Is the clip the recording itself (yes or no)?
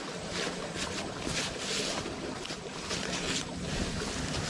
no